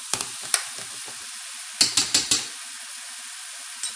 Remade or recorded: recorded